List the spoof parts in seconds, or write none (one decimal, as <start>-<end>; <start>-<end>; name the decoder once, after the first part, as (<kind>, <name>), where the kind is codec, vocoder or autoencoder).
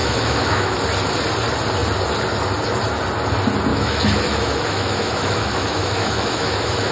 0.0-0.8 (autoencoder, DAC-VAE); 3.7-6.9